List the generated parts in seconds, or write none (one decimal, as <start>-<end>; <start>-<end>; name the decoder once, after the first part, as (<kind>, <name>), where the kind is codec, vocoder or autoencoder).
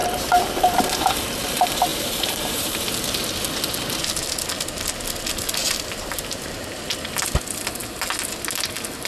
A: 0.0-0.8 (vocoder, BigVGAN v2); 1.9-2.8; 5.6-6.8